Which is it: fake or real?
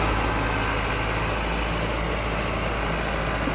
real